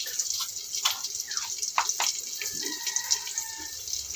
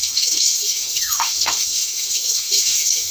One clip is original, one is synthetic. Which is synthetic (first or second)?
second